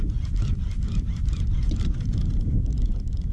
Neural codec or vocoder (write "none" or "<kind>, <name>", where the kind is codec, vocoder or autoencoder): none